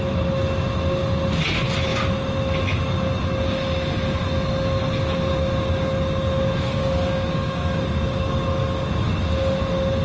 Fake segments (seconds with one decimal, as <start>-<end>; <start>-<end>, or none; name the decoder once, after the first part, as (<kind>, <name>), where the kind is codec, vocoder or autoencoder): 6.7-7.8 (codec, DAC)